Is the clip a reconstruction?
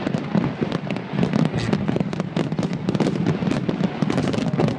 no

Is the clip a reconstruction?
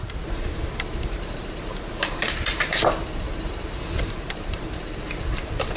yes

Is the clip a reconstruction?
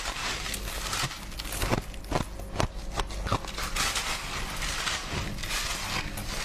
no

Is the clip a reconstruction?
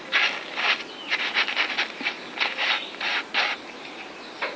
no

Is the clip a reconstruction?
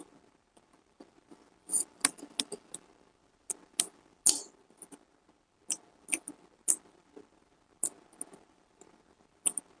no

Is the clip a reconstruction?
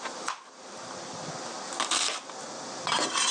no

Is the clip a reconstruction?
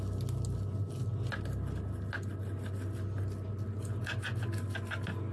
no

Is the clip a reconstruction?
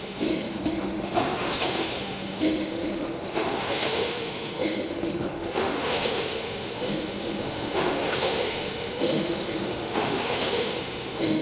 yes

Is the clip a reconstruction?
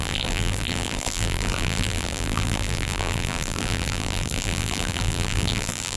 yes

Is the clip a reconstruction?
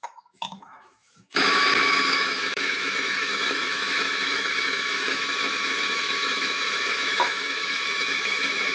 yes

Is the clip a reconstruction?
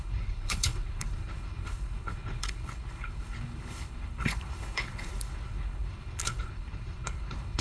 yes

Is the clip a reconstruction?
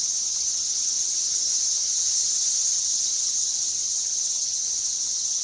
yes